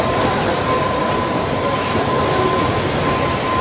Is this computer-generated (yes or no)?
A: no